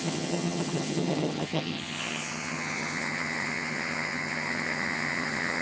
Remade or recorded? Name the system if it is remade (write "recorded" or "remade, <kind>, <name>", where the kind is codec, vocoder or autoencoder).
remade, vocoder, HiFi-GAN